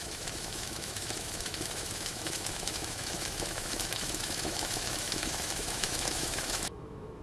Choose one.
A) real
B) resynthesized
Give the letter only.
B